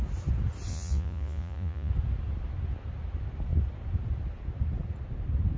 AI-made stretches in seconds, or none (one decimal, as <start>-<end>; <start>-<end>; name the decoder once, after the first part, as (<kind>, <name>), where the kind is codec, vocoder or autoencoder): 0.7-1.9 (vocoder, Vocos)